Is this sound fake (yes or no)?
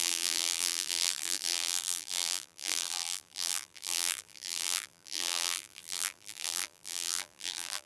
yes